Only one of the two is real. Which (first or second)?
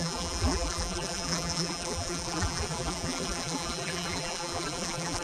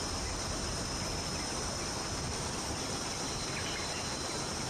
second